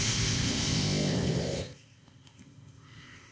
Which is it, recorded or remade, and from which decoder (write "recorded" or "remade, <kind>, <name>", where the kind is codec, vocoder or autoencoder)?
remade, codec, ZipCodec